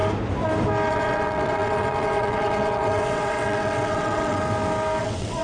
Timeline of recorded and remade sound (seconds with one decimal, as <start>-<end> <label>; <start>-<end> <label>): 0.0-0.9 recorded; 0.9-4.4 remade; 4.4-5.0 recorded; 5.0-5.4 remade